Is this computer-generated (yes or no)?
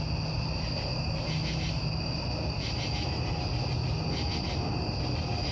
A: no